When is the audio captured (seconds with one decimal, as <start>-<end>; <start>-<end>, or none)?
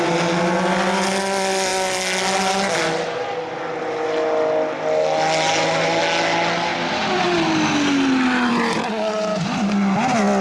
0.0-10.4